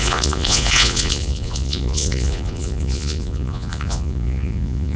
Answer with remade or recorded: remade